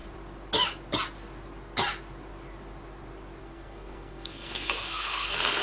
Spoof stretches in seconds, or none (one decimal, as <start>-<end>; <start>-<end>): 3.4-5.6